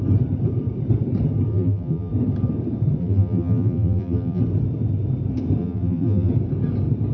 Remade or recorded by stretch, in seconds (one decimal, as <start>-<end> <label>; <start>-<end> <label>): 0.0-1.5 recorded; 1.5-2.1 remade; 2.1-3.0 recorded; 3.0-4.4 remade; 4.4-5.6 recorded; 5.6-6.3 remade; 6.3-7.1 recorded